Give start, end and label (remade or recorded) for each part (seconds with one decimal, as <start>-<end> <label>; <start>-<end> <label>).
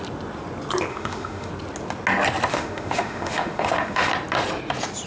0.0-0.9 recorded; 0.9-1.5 remade; 1.5-2.5 recorded; 2.5-4.1 remade; 4.1-5.1 recorded